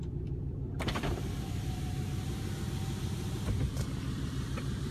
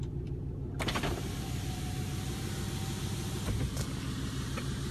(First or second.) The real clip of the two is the second